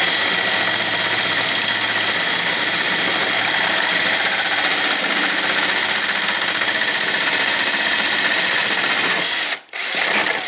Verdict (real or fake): real